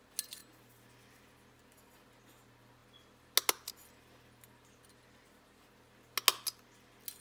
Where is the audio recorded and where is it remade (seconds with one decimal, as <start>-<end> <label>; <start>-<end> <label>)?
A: 0.0-7.2 recorded